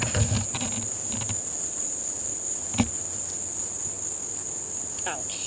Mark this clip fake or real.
real